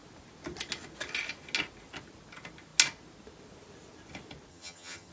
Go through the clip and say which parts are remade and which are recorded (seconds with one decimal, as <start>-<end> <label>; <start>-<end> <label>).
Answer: 0.0-4.5 recorded; 4.5-5.1 remade